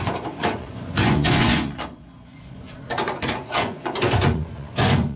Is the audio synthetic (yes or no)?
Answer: yes